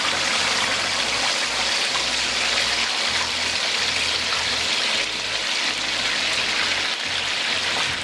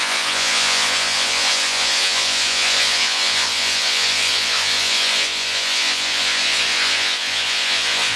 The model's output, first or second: second